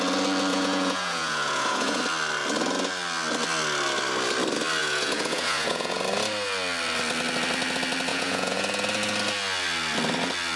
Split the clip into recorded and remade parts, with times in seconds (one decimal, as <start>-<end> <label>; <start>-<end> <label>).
0.0-0.5 recorded; 0.5-2.0 remade; 2.0-4.8 recorded; 4.8-6.0 remade; 6.0-8.1 recorded; 8.1-8.6 remade; 8.6-10.6 recorded